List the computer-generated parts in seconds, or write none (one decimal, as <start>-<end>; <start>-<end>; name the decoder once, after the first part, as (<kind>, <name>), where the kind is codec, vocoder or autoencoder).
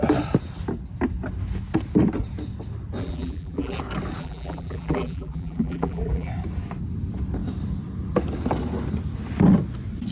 3.0-3.8 (vocoder, BigVGAN v2); 4.2-6.3